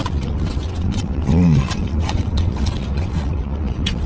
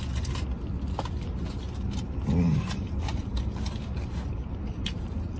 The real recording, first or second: second